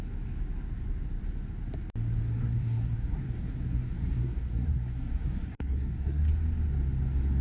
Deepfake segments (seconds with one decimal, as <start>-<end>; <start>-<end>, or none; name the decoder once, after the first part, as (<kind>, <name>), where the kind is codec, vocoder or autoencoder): 2.3-6.2 (codec, SNAC)

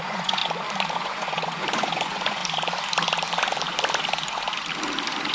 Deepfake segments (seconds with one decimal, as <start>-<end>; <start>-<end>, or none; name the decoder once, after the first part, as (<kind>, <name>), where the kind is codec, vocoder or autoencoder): 0.0-0.4 (vocoder, Vocos); 0.9-2.4

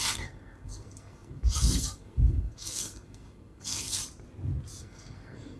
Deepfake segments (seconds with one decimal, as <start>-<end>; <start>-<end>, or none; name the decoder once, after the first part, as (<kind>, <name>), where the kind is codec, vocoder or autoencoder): 0.0-4.0 (codec, SNAC); 4.8-5.6

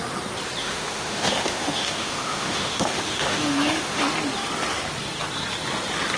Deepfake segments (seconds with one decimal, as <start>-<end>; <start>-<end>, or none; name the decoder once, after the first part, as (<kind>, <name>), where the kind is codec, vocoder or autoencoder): 0.6-4.0 (autoencoder, DAC-VAE)

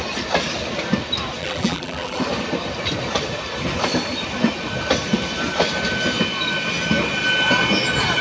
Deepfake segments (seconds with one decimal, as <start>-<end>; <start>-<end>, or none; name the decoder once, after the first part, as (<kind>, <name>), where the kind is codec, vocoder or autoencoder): 1.4-2.2 (vocoder, BigVGAN v2)

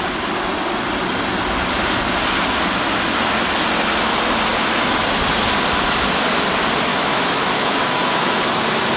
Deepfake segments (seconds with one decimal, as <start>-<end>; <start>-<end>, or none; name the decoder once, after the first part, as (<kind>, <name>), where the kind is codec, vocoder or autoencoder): 6.9-8.4 (autoencoder, DAC-VAE)

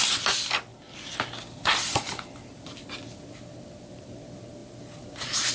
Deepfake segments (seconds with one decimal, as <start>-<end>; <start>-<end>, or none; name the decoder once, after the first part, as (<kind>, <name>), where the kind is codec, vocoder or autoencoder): 0.7-4.0 (vocoder, BigVGAN v2)

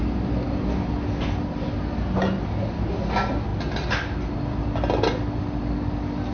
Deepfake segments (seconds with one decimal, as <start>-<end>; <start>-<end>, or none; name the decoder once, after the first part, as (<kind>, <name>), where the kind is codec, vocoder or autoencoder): none